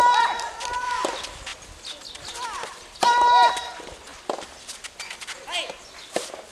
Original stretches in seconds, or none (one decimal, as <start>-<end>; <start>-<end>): 0.0-6.5